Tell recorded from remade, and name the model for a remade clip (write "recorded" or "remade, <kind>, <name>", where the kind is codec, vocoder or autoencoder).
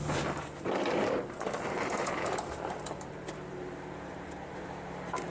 remade, vocoder, BigVGAN v2